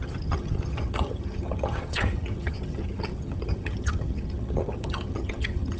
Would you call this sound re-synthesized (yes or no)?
yes